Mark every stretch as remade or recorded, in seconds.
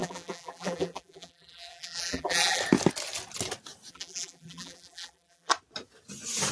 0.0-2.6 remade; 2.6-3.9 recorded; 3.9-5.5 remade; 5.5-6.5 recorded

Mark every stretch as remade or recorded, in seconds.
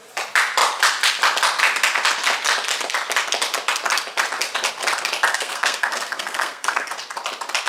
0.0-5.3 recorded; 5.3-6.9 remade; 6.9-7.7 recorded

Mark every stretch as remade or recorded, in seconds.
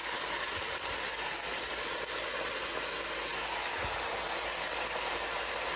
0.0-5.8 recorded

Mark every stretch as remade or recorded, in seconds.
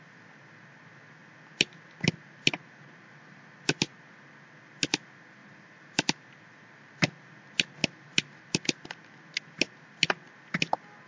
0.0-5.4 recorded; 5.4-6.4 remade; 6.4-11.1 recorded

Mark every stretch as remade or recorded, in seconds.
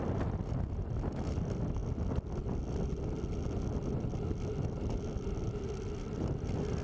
0.0-6.8 recorded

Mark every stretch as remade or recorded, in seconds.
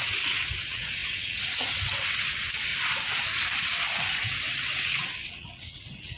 0.0-2.7 remade; 2.7-3.9 recorded; 3.9-6.2 remade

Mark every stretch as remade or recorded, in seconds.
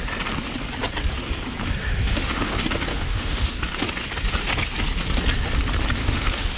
0.0-1.8 recorded; 1.8-2.5 remade; 2.5-2.9 recorded; 2.9-3.6 remade; 3.6-6.0 recorded; 6.0-6.6 remade